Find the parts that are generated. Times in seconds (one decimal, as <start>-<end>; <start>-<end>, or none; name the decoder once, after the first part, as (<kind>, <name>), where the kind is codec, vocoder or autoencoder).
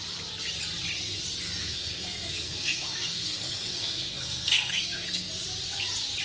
1.6-5.3 (codec, SNAC)